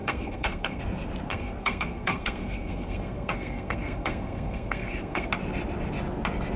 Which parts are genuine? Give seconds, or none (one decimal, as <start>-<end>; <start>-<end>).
0.8-1.3; 5.3-6.6